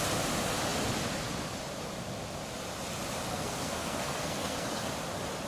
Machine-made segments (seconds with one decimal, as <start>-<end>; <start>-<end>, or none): 3.3-4.9